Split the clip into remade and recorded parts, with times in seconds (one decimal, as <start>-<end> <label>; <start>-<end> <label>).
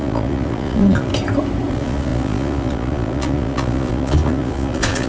0.0-1.1 remade; 1.1-1.7 recorded; 1.7-5.1 remade